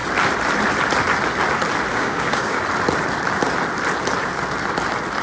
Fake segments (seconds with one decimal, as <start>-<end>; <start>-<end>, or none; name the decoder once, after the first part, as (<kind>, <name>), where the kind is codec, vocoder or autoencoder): 1.9-2.6 (codec, DAC)